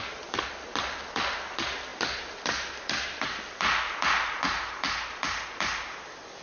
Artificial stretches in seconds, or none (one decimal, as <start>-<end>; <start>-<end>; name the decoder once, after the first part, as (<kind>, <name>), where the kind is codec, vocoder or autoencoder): none